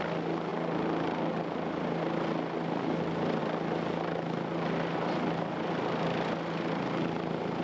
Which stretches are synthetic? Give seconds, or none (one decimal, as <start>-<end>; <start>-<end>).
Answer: none